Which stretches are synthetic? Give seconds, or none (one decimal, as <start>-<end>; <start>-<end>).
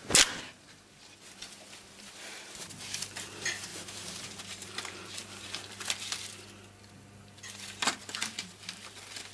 3.7-5.0